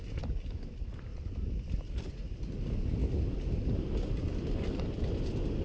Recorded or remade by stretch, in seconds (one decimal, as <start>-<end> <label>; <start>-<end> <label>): 0.0-5.6 recorded